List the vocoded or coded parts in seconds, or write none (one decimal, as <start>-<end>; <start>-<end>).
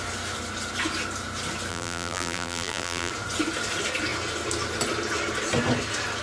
1.7-3.1